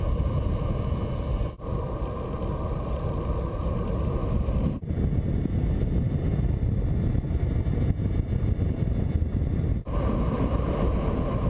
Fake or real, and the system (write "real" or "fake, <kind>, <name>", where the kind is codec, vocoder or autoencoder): fake, vocoder, BigVGAN v2